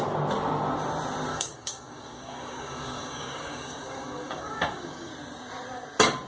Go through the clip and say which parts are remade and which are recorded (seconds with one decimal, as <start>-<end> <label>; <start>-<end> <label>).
0.0-1.3 recorded; 1.3-5.1 remade; 5.1-6.3 recorded